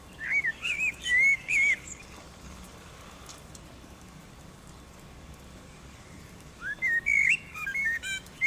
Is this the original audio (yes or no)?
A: no